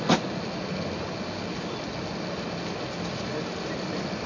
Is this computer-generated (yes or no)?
no